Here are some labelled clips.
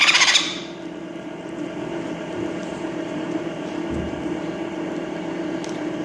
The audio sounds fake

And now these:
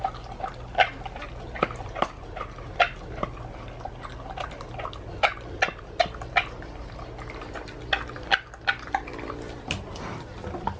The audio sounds real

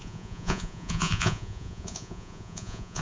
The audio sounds fake